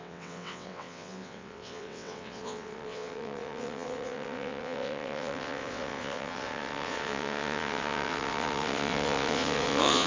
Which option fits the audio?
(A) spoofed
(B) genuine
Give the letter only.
A